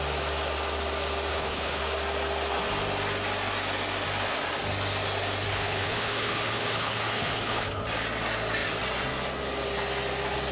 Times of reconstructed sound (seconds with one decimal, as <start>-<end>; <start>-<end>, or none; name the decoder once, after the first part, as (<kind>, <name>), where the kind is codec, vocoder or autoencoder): 1.3-1.8 (codec, HILCodec); 5.5-7.8